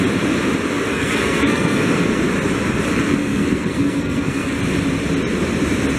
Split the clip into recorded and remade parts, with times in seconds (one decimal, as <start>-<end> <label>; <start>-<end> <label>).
0.0-0.9 recorded; 0.9-2.2 remade; 2.2-2.9 recorded; 2.9-4.6 remade; 4.6-6.0 recorded